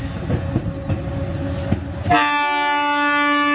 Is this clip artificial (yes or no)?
no